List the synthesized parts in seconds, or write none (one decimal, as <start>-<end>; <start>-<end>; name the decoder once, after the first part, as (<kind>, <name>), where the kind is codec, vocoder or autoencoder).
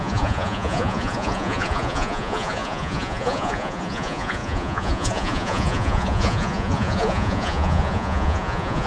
0.0-8.9 (vocoder, Vocos)